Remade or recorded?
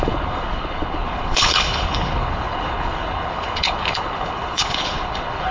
remade